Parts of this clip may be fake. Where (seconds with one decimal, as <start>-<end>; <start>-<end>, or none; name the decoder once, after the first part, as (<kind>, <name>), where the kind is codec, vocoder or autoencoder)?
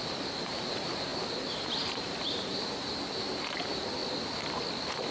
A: 0.0-1.1 (vocoder, BigVGAN v2); 1.6-4.0